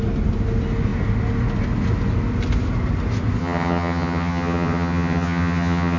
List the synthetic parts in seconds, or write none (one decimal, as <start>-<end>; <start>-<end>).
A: 3.4-6.0